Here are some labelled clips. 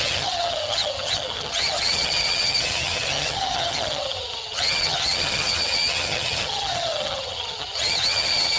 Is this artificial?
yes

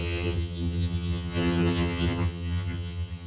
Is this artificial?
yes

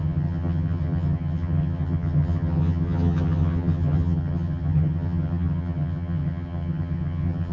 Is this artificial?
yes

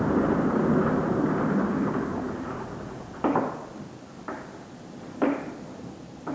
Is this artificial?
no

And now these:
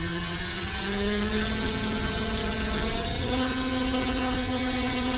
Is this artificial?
yes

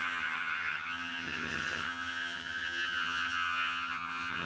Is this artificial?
yes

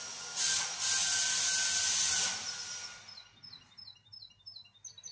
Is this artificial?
no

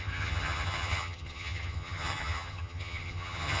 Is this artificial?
yes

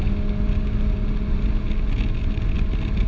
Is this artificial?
no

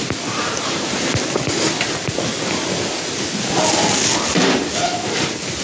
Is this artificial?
no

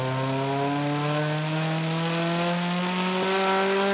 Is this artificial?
no